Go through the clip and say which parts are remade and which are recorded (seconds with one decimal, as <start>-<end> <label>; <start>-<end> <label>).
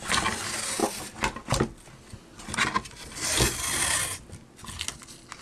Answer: 0.0-5.4 recorded